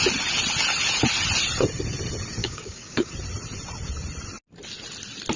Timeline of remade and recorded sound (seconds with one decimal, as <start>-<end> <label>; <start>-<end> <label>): 0.0-2.4 recorded; 2.4-3.1 remade; 3.1-5.4 recorded